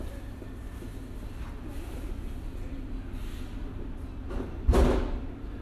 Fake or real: real